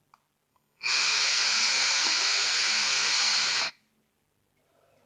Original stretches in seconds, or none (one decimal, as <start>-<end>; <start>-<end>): 0.0-0.5; 3.6-5.1

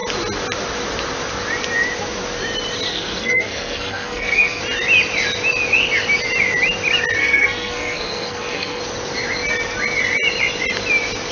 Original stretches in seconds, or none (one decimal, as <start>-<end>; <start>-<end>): 0.0-2.9; 4.6-7.2; 8.8-11.3

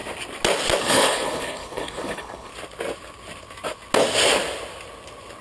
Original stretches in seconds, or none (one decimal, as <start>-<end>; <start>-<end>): 0.0-0.8; 2.5-5.4

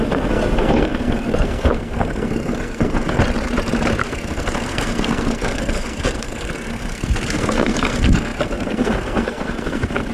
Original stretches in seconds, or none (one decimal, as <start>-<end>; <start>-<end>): 3.2-4.0

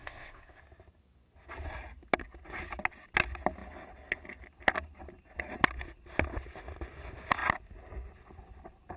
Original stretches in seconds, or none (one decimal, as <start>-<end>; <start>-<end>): 0.6-9.0

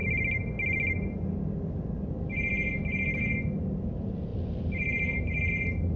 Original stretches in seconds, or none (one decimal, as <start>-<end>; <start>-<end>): 0.0-4.3; 5.5-6.0

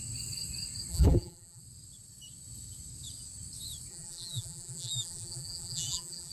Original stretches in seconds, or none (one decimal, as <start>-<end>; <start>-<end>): 0.0-0.9; 1.6-3.9